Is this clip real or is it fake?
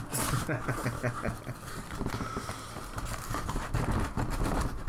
real